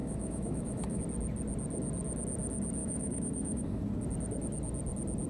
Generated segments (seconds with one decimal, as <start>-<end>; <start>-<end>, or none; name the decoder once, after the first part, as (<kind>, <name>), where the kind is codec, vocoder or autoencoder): 0.0-1.0 (autoencoder, DAC-VAE); 2.8-3.8